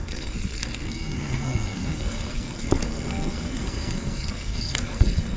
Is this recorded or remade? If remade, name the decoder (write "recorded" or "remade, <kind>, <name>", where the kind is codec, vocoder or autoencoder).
remade, codec, SNAC